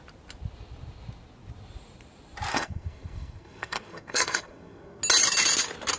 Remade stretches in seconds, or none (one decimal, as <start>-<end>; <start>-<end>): 2.5-5.0